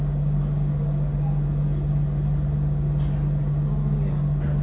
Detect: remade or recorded recorded